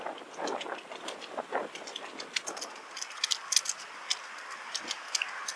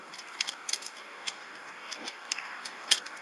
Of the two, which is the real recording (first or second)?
first